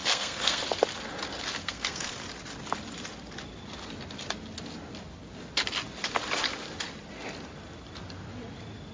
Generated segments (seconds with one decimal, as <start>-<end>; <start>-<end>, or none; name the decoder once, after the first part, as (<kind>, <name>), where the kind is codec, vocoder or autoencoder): 0.0-0.6 (codec, SNAC); 1.6-2.1